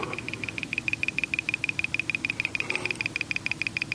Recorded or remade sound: recorded